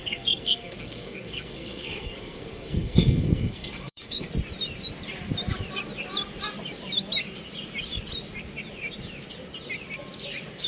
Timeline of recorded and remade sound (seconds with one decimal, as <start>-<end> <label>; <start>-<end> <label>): 0.0-4.3 remade; 4.3-10.7 recorded

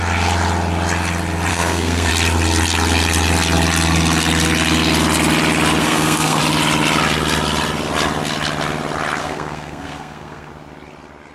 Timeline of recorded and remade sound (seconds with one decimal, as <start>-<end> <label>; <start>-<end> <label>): 0.0-1.5 recorded; 1.5-2.1 remade; 2.1-5.8 recorded; 5.8-6.4 remade; 6.4-9.2 recorded; 9.2-10.5 remade; 10.5-11.3 recorded

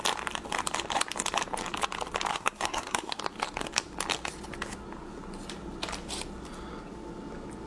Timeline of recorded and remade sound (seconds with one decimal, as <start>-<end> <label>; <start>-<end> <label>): 0.0-2.3 recorded; 2.3-3.2 remade; 3.2-7.7 recorded

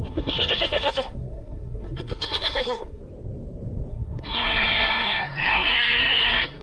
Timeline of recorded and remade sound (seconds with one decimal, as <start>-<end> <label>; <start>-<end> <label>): 0.0-3.0 remade; 3.0-3.9 recorded; 3.9-6.6 remade

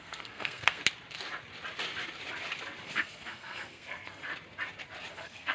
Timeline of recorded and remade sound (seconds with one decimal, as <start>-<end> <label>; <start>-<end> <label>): 0.0-0.8 remade; 0.8-2.8 recorded; 2.8-4.3 remade; 4.3-5.1 recorded; 5.1-5.5 remade